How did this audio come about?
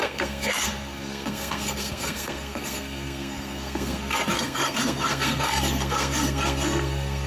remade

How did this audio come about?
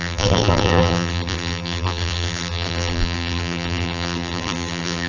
remade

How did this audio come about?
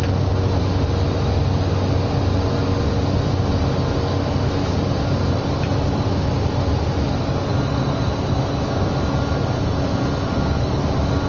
recorded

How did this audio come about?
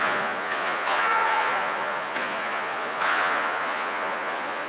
remade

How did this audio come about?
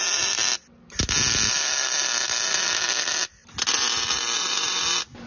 recorded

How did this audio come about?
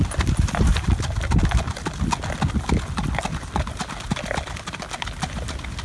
recorded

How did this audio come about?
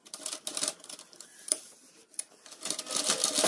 recorded